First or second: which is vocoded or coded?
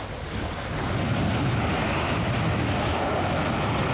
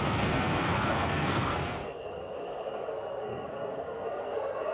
second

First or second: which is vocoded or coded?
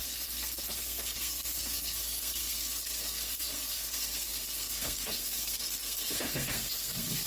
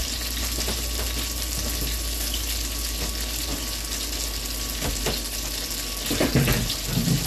first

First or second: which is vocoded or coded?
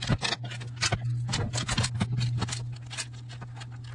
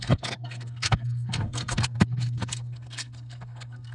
second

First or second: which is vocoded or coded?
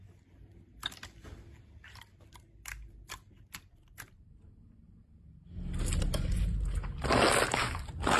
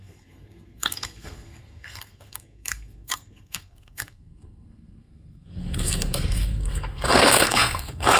second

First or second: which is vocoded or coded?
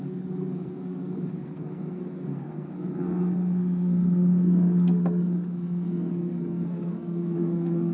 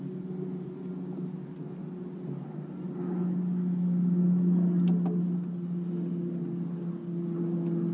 first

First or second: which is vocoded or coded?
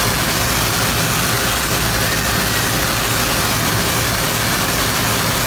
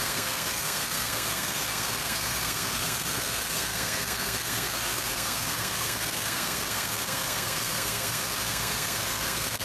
second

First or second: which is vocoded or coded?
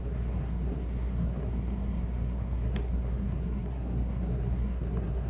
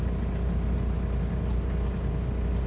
first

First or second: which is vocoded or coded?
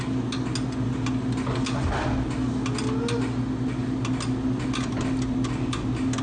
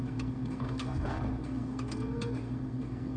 second